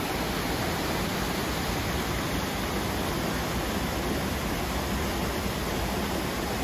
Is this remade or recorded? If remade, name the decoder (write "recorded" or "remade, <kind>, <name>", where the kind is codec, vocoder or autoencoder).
recorded